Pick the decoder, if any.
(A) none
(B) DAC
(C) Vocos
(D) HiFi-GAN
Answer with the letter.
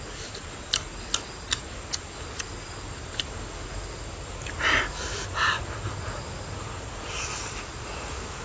A